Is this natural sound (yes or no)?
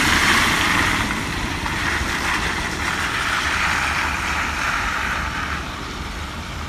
no